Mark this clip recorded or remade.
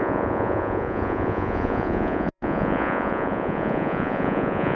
remade